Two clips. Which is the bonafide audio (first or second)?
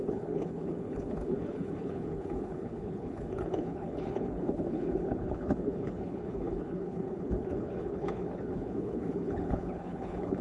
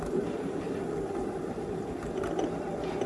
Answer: second